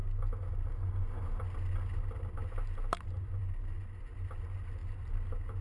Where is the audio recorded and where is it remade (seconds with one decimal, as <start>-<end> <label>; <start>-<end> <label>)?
0.0-5.6 recorded